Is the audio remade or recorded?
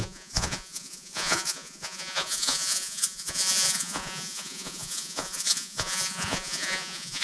remade